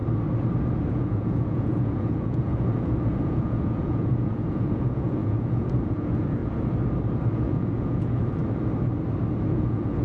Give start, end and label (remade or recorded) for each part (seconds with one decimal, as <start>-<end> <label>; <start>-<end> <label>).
0.0-0.9 recorded; 0.9-6.4 remade; 6.4-7.3 recorded; 7.3-8.4 remade; 8.4-9.5 recorded; 9.5-10.0 remade